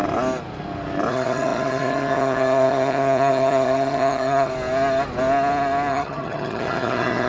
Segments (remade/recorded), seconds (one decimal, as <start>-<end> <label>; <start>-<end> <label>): 0.0-1.1 recorded; 1.1-4.5 remade; 4.5-5.9 recorded; 5.9-7.3 remade